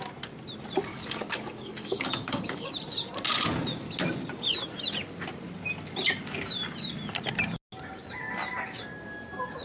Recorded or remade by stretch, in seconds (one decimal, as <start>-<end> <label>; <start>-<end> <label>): 0.0-0.9 recorded; 0.9-2.7 remade; 2.7-9.6 recorded